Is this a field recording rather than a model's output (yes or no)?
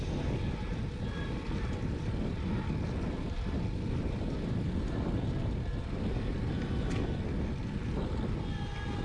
yes